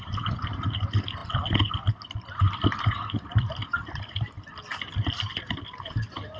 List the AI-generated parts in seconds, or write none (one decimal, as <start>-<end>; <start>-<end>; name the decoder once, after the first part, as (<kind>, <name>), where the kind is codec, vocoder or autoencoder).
none